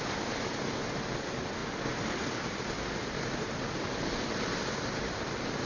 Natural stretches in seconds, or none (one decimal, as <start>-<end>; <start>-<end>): 1.6-5.0